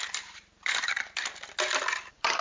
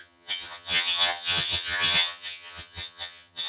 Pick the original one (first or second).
first